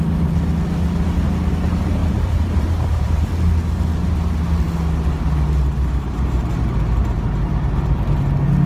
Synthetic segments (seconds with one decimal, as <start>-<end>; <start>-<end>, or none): 2.0-3.3